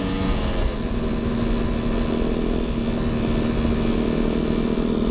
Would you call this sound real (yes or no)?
yes